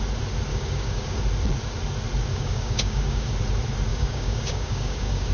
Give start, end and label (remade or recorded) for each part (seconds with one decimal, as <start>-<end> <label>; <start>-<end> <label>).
0.0-0.5 recorded; 0.5-1.2 remade; 1.2-2.3 recorded; 2.3-3.3 remade; 3.3-3.9 recorded; 3.9-5.3 remade